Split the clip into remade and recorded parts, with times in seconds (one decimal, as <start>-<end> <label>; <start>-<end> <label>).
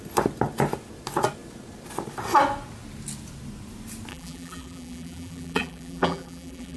0.0-4.1 recorded; 4.1-6.8 remade